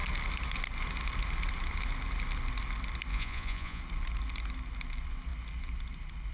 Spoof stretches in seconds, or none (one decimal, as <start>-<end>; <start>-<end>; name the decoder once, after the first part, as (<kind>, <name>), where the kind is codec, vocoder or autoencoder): 3.1-3.8 (vocoder, Vocos)